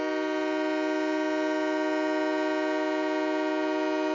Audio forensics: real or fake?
real